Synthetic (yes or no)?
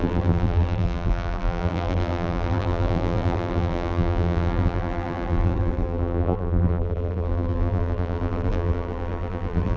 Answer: yes